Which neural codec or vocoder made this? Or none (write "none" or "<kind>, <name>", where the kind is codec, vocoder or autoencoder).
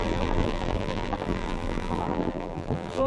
vocoder, BigVGAN v2